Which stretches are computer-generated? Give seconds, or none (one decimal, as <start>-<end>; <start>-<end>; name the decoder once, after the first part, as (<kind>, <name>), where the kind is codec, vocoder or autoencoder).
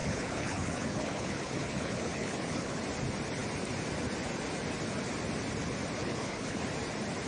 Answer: 0.0-2.8 (codec, HILCodec); 6.0-6.6